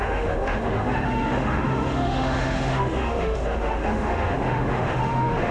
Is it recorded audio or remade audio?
remade